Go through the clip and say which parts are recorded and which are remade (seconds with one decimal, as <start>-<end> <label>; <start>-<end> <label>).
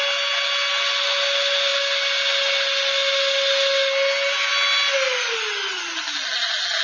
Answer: 0.0-6.8 recorded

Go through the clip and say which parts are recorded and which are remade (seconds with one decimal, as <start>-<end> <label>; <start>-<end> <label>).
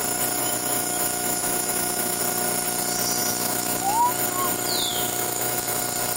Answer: 0.0-0.4 recorded; 0.4-2.2 remade; 2.2-3.2 recorded; 3.2-4.1 remade; 4.1-4.9 recorded; 4.9-5.8 remade; 5.8-6.2 recorded